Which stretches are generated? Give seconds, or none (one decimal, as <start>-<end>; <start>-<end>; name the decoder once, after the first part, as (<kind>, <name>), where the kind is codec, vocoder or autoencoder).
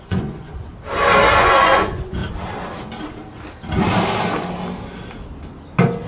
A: 0.0-0.7 (vocoder, Vocos); 1.4-2.2